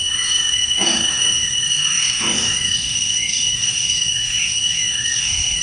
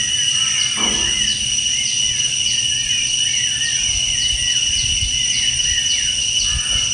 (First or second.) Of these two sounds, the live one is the second